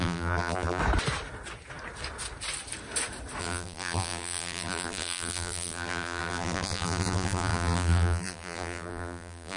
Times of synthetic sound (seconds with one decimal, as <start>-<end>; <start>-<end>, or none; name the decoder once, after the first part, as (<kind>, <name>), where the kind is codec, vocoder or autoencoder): 0.0-0.8 (vocoder, BigVGAN v2); 3.4-9.6